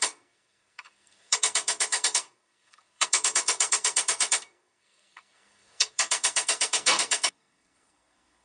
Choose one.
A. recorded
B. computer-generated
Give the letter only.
B